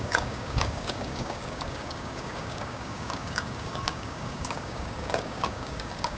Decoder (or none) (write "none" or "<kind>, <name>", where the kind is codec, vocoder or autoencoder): codec, DAC